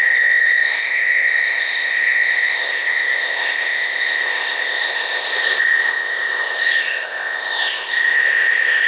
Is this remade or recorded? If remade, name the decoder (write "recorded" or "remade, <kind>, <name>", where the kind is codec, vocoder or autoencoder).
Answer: remade, codec, ZipCodec